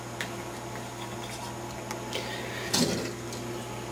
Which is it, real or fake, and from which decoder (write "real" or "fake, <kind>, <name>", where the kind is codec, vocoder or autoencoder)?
real